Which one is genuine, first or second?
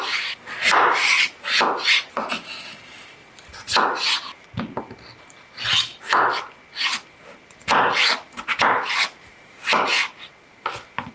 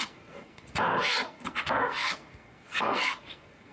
first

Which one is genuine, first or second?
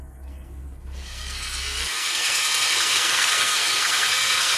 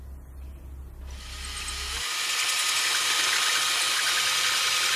second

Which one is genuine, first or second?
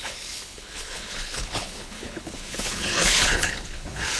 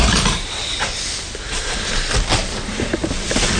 second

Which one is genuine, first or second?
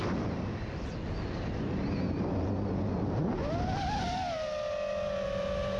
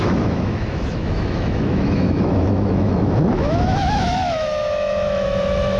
first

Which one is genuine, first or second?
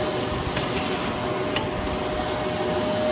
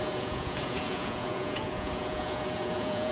first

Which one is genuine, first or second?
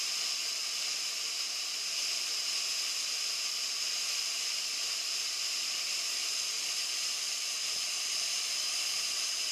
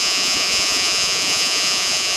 first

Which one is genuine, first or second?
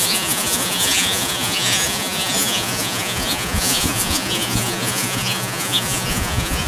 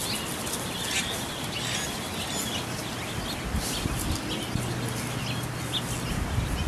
second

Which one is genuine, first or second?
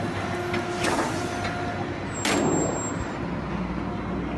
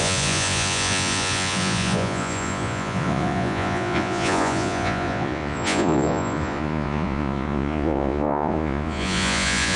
first